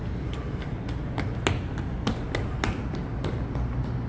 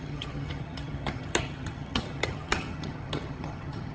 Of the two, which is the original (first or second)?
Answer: first